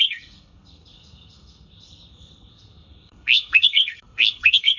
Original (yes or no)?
no